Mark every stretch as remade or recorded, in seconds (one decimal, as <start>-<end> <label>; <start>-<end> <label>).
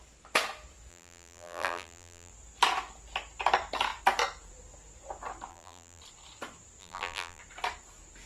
0.0-0.9 recorded; 0.9-2.3 remade; 2.3-5.5 recorded; 5.5-6.0 remade; 6.0-6.8 recorded; 6.8-7.4 remade; 7.4-8.3 recorded